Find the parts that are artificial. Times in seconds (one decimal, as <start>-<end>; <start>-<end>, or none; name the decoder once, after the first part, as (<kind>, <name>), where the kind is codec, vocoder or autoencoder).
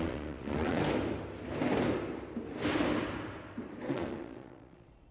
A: 0.0-0.8 (vocoder, Vocos); 3.9-5.1